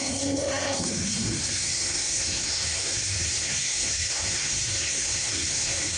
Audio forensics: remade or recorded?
remade